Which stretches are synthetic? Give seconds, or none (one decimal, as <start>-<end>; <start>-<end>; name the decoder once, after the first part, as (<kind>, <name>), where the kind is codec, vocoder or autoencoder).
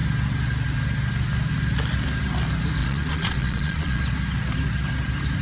2.8-4.0 (vocoder, Vocos)